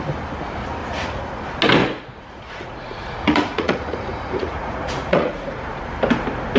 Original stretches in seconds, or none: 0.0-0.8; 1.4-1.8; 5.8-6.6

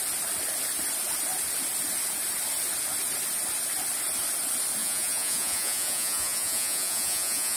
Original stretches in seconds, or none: 0.0-4.8